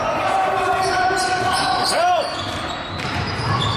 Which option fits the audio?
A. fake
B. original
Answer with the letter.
A